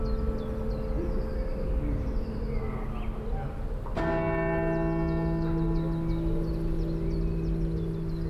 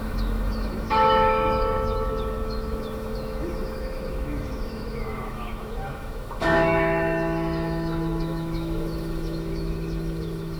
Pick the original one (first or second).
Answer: first